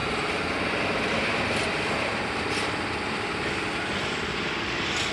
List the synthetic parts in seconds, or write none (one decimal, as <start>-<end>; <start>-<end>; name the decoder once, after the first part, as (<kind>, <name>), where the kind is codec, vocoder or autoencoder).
none